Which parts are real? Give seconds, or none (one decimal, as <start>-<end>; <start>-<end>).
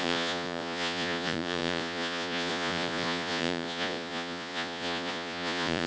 none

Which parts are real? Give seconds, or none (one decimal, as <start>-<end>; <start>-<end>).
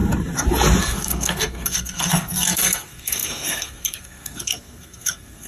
0.0-0.8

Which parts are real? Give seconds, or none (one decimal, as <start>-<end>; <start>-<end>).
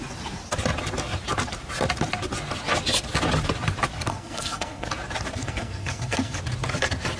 0.0-4.1; 4.9-5.4; 6.4-7.2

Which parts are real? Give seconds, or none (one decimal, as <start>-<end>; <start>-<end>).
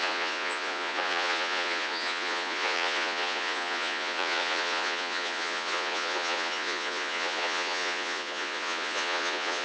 none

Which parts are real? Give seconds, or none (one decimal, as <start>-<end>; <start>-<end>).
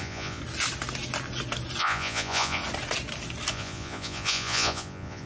0.4-1.8; 2.6-3.5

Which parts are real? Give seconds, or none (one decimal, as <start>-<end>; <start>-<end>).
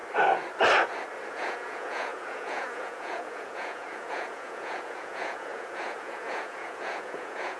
0.0-1.3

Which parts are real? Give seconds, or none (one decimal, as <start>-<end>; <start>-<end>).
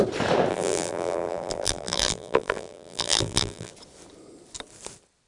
0.0-0.5; 3.7-5.3